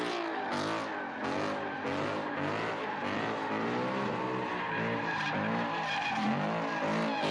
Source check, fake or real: real